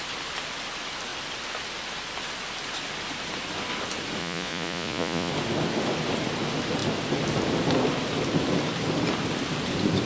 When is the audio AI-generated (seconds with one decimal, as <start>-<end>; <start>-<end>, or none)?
4.2-5.3